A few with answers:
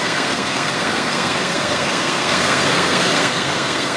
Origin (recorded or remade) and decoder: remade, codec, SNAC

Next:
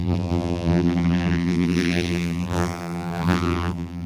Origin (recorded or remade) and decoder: remade, vocoder, BigVGAN v2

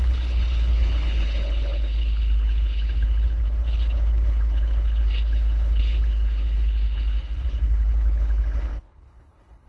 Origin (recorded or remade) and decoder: remade, codec, HILCodec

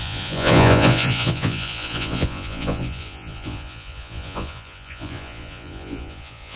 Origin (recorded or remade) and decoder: remade, vocoder, Vocos